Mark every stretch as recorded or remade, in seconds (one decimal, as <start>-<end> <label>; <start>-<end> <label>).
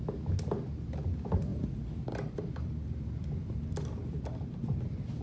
0.0-1.5 recorded; 1.5-4.2 remade; 4.2-5.2 recorded